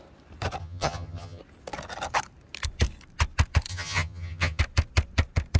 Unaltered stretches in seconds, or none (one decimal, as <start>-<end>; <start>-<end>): 0.0-0.6; 1.4-3.7; 4.6-5.6

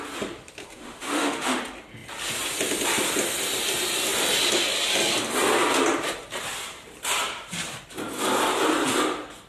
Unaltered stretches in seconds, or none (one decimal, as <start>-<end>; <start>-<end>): 0.0-0.6; 1.6-9.5